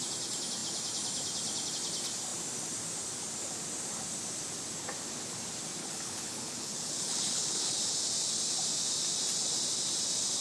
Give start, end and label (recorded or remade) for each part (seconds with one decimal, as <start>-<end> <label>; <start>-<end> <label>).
0.0-5.8 recorded; 5.8-7.8 remade; 7.8-10.4 recorded